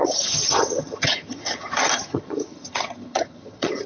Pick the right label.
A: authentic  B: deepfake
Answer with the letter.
B